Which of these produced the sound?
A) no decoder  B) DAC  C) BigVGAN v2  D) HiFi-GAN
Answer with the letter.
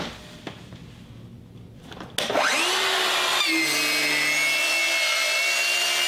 A